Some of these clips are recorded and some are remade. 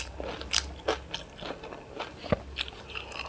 recorded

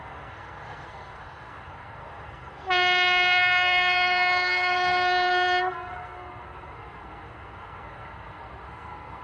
remade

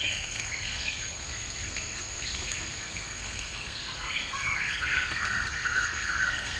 remade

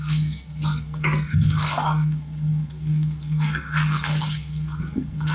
remade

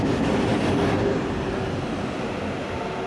recorded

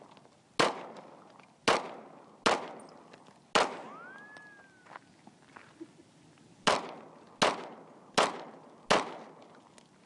recorded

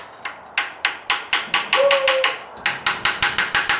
recorded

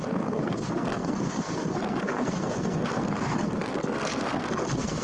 remade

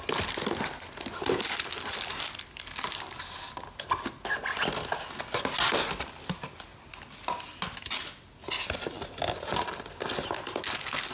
recorded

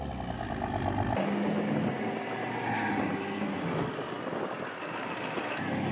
recorded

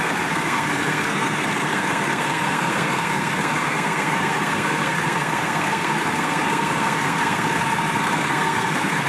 remade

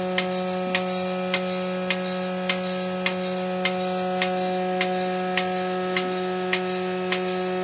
recorded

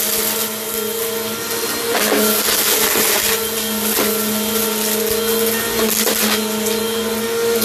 recorded